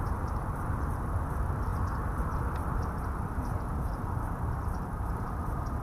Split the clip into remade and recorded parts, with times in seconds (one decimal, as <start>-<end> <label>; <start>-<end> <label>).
0.0-5.8 remade